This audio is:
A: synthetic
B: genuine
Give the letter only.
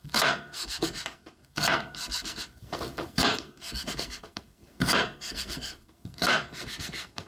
A